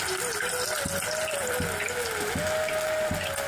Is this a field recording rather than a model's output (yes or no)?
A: yes